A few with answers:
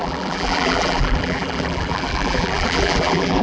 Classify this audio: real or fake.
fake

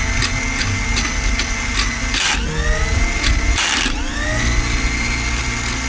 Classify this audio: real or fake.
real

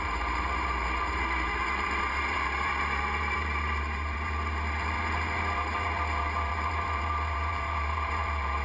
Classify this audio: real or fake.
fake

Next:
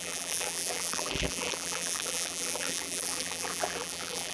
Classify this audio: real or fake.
fake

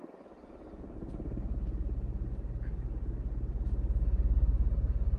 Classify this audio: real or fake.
real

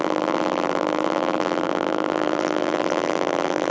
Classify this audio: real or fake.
fake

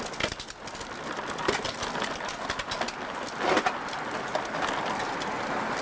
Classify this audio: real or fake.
real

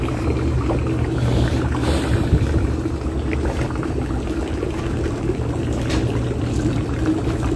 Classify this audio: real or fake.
real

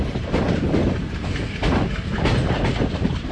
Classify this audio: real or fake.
real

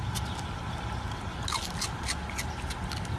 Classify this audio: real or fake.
real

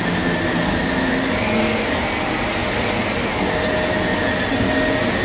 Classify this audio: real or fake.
real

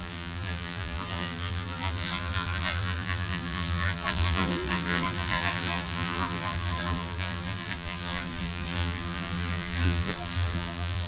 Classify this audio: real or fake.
fake